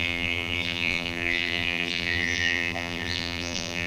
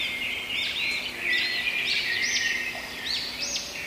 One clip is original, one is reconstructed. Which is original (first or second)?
second